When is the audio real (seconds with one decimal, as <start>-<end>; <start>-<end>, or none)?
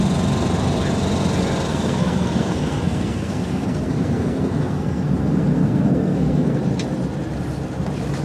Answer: 0.0-1.7; 6.6-8.2